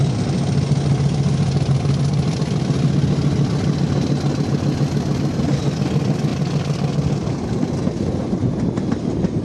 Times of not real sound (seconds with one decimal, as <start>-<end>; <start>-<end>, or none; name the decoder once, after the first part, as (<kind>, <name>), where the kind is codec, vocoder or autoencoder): none

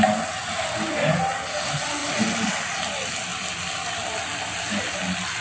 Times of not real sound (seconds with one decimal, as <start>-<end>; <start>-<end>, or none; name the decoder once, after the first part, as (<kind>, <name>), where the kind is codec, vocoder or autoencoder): 0.4-1.1 (vocoder, BigVGAN v2)

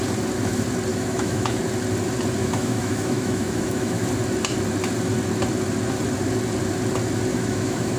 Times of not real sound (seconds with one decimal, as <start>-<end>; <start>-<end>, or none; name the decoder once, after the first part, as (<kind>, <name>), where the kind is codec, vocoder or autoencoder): 0.9-1.6 (autoencoder, DAC-VAE); 2.4-4.1; 7.3-8.0

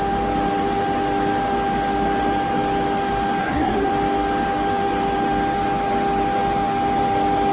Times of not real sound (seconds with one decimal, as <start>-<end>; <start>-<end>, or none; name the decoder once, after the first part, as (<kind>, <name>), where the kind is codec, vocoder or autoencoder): 3.4-3.9 (codec, SNAC)

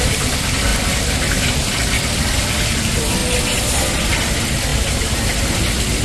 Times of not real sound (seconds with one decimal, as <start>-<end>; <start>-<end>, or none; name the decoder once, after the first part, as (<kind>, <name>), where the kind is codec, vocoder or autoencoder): none

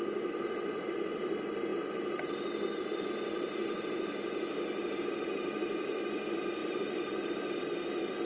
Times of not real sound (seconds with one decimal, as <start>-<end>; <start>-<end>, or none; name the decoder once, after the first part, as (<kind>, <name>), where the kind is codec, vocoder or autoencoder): none

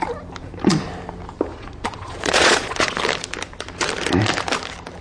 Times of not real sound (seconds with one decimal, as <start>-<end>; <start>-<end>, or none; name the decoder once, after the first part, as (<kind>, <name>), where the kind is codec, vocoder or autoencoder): 1.5-3.0 (vocoder, Vocos)

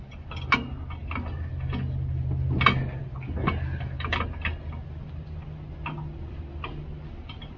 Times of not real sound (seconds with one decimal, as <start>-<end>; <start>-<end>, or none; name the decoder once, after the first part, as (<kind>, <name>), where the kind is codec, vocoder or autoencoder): none